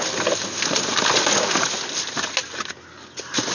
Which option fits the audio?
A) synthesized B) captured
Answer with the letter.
B